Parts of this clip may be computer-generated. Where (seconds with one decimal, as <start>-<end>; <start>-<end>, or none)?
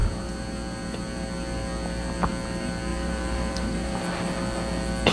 2.9-4.0